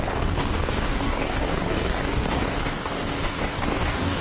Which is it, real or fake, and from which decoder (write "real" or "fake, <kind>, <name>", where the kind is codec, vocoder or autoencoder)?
fake, codec, DAC